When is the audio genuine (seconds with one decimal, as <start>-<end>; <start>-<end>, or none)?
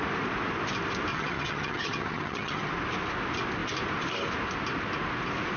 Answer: 0.0-1.1; 2.7-5.6